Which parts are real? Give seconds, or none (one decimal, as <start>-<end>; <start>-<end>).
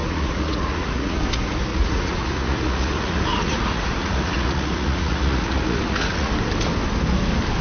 1.2-1.7; 6.3-7.6